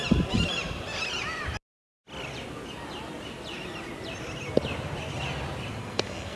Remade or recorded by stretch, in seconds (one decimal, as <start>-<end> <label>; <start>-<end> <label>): 0.0-5.8 recorded; 5.8-6.4 remade